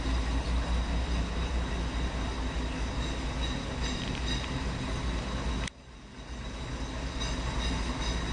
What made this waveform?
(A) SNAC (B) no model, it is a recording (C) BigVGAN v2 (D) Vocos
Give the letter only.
B